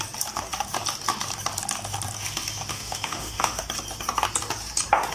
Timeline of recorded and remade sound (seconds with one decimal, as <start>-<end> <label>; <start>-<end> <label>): 0.0-2.7 recorded; 2.7-3.6 remade; 3.6-5.1 recorded